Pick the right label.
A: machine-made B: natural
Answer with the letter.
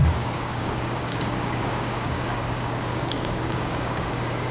A